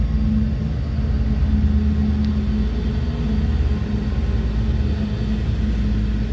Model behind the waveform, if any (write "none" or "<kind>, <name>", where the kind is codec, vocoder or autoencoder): none